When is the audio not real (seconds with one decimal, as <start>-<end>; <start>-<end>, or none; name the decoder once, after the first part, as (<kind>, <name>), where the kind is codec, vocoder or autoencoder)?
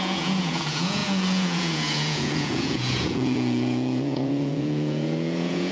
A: 0.0-5.7 (vocoder, Vocos)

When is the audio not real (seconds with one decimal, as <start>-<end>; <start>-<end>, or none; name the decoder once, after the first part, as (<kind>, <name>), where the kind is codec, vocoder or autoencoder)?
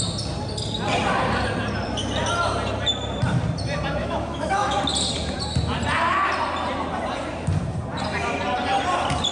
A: 4.0-4.8 (autoencoder, DAC-VAE)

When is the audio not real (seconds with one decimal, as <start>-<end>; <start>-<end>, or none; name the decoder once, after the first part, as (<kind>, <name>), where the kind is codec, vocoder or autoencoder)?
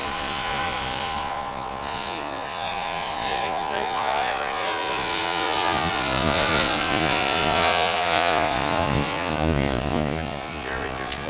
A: 0.0-11.3 (vocoder, Vocos)